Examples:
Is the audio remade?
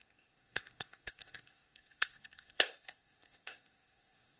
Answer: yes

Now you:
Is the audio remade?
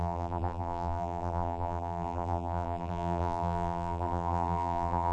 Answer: yes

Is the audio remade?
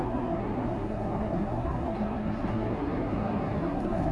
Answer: yes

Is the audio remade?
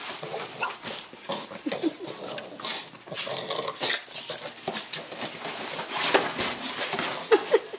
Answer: no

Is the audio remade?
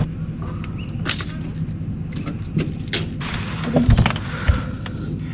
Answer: no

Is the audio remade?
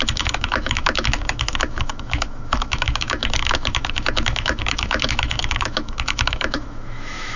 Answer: yes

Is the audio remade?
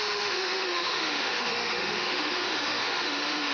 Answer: yes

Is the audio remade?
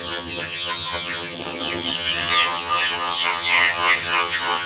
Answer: yes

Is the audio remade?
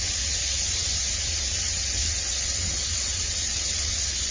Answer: yes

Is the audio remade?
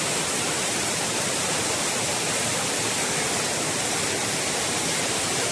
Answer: no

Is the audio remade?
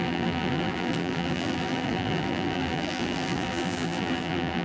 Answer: yes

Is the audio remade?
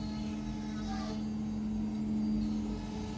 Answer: no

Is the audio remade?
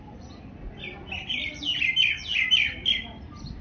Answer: no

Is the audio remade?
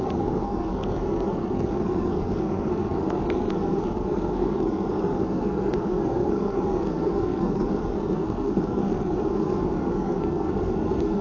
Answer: yes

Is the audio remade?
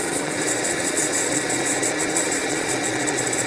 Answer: yes